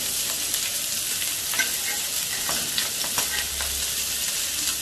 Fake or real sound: real